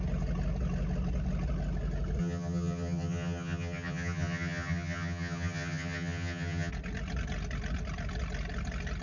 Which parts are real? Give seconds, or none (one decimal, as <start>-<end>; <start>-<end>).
0.0-2.2; 6.7-9.0